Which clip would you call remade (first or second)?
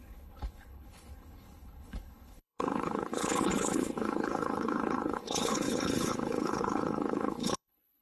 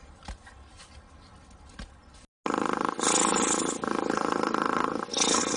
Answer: first